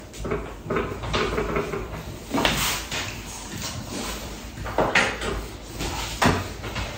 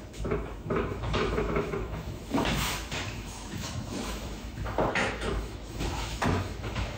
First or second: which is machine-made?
second